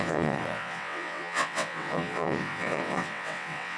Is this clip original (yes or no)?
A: no